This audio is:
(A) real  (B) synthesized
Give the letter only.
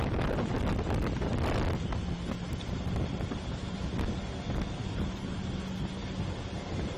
A